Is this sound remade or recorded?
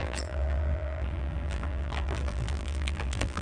remade